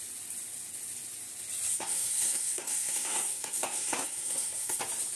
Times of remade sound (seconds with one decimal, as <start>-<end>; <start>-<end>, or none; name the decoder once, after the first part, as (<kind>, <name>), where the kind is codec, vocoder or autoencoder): 1.7-4.8 (codec, SNAC)